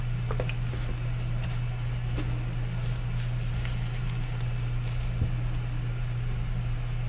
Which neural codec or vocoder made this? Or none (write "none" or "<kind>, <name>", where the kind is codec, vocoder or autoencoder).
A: none